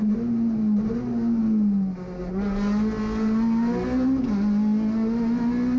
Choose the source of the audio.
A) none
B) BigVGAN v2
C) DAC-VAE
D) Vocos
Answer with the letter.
A